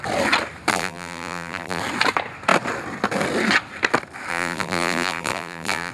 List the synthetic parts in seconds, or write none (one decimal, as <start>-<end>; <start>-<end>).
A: 0.7-1.8; 4.3-5.9